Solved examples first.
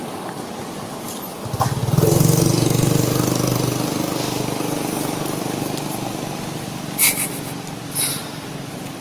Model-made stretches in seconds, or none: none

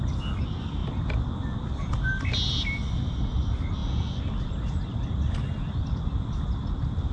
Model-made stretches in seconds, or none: 0.8-2.0 (vocoder, BigVGAN v2)